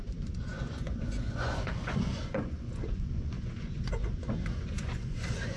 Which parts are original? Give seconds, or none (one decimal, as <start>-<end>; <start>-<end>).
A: none